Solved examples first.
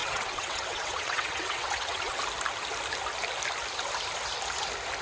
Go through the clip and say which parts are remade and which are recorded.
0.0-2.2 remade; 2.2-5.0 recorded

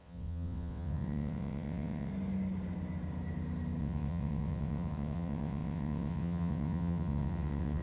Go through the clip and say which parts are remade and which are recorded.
0.0-2.1 remade; 2.1-3.8 recorded; 3.8-7.8 remade

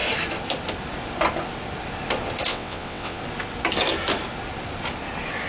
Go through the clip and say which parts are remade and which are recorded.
0.0-2.5 recorded; 2.5-3.2 remade; 3.2-5.5 recorded

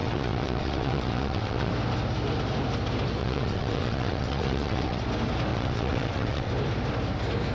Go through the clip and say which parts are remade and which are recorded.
0.0-1.7 remade; 1.7-3.2 recorded; 3.2-5.0 remade; 5.0-5.5 recorded; 5.5-6.5 remade; 6.5-7.5 recorded

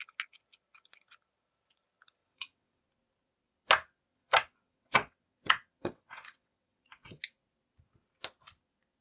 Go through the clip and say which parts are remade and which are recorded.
0.0-2.2 recorded; 2.2-2.8 remade; 2.8-4.1 recorded; 4.1-7.2 remade; 7.2-9.0 recorded

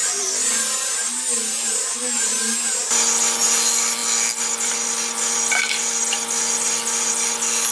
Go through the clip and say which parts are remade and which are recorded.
0.0-7.7 recorded